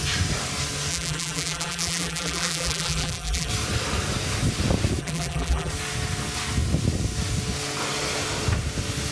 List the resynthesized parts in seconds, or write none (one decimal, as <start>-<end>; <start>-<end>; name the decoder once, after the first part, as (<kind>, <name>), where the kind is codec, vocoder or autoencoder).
0.9-3.5 (vocoder, BigVGAN v2); 5.0-5.7

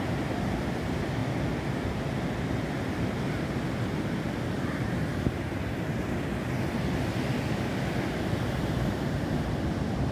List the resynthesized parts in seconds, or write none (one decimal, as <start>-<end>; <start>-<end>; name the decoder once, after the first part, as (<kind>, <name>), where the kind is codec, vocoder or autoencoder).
none

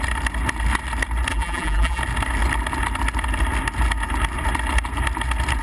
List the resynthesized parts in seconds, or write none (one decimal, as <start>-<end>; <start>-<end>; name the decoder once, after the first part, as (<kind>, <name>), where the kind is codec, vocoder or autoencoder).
1.3-2.0 (vocoder, BigVGAN v2)

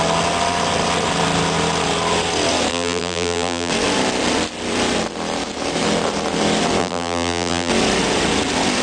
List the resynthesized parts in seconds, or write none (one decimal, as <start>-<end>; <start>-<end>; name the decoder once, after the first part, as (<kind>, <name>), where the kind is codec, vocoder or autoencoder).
2.7-3.7 (vocoder, BigVGAN v2); 6.8-7.7

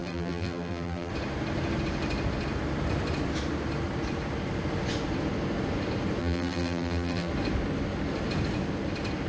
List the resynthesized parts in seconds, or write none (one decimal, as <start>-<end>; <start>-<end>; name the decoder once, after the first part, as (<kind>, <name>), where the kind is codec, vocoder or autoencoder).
0.0-1.1 (vocoder, BigVGAN v2); 6.2-7.3